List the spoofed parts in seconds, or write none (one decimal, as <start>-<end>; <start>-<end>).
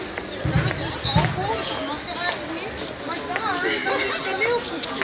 4.2-5.0